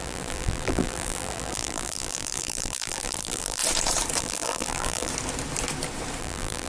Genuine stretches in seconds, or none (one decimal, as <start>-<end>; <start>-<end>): 3.6-4.2; 5.1-6.2